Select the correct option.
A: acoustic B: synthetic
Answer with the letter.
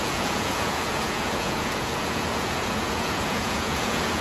B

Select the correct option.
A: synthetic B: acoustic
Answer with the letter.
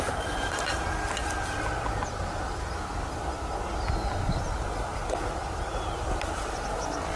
B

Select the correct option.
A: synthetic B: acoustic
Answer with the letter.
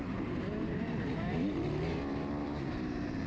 A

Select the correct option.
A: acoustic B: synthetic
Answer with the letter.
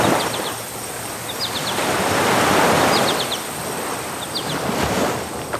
A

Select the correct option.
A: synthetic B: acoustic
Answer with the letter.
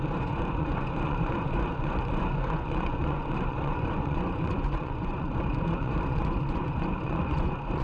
A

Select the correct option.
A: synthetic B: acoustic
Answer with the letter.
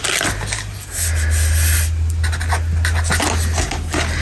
B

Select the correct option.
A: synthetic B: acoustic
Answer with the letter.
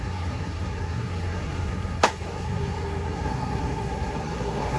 A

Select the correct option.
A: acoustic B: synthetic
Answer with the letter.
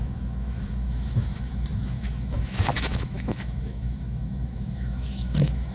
B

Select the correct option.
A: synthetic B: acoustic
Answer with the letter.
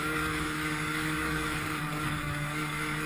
A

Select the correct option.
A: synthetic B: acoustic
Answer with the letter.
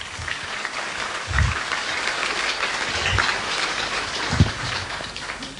A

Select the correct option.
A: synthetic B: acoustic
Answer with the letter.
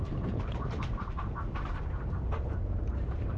A